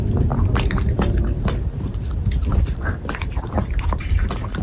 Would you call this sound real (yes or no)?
no